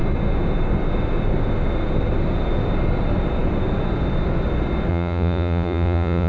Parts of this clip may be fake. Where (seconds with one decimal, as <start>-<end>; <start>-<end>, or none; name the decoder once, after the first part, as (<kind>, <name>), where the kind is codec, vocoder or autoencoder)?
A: 4.9-6.3 (vocoder, Vocos)